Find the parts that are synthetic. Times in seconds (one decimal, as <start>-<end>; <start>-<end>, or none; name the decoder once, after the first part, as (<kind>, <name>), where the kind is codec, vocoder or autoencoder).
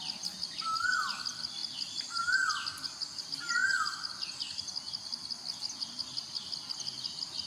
none